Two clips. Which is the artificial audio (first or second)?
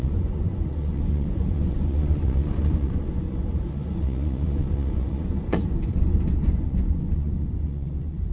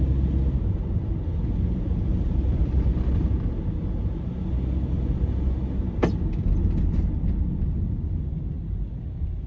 first